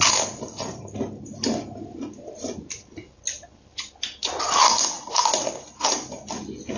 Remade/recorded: recorded